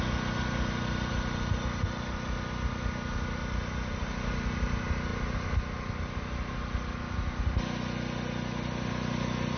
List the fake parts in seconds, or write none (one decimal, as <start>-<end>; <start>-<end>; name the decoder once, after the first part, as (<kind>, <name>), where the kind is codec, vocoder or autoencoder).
none